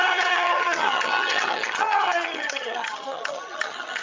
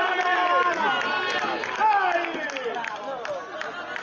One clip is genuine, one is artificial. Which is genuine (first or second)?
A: second